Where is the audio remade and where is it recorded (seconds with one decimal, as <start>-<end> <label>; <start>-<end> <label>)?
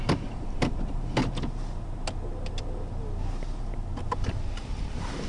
0.0-1.2 remade; 1.2-4.0 recorded; 4.0-5.3 remade